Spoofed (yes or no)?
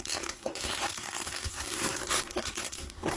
yes